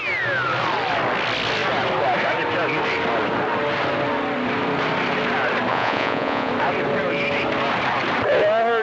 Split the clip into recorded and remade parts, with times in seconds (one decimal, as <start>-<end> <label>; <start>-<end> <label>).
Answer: 0.0-5.7 recorded; 5.7-6.5 remade; 6.5-8.8 recorded